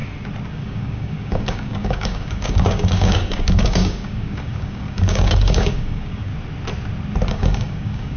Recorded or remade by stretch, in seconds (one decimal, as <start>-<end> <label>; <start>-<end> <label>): 0.0-0.5 recorded; 0.5-6.3 remade; 6.3-7.3 recorded; 7.3-8.2 remade